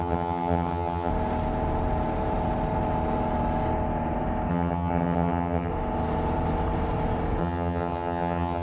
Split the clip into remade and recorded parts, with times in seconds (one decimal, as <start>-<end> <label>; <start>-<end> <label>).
0.0-1.1 remade; 1.1-4.5 recorded; 4.5-5.7 remade; 5.7-7.4 recorded; 7.4-8.6 remade